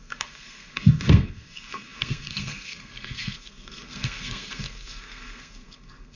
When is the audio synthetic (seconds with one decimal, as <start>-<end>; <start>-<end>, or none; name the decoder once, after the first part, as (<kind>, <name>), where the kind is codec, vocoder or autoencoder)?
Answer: 0.0-6.2 (codec, SNAC)